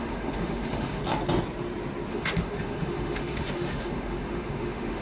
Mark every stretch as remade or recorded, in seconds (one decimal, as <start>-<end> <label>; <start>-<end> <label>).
0.0-1.0 remade; 1.0-2.1 recorded; 2.1-5.0 remade